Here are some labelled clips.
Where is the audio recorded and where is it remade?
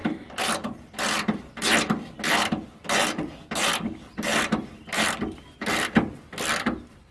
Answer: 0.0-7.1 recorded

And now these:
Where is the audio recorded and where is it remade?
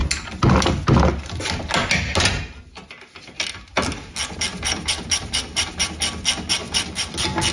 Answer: 0.0-4.5 recorded; 4.5-5.9 remade; 5.9-6.6 recorded; 6.6-7.1 remade; 7.1-7.5 recorded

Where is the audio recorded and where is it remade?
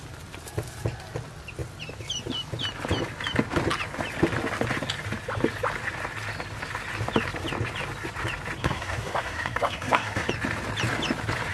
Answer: 0.0-8.6 recorded; 8.6-10.3 remade; 10.3-11.5 recorded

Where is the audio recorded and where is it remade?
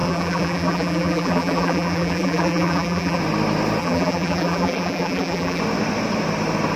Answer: 0.0-3.2 remade; 3.2-3.8 recorded; 3.8-5.6 remade; 5.6-6.8 recorded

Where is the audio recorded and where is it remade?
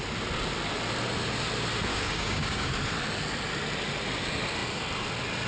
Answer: 0.0-1.9 recorded; 1.9-2.7 remade; 2.7-5.5 recorded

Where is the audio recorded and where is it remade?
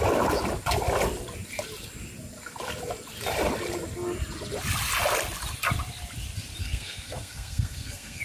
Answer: 0.0-6.6 recorded; 6.6-8.2 remade